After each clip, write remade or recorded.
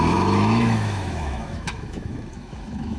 remade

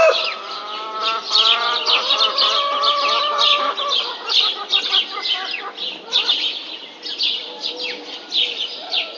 recorded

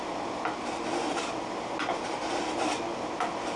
recorded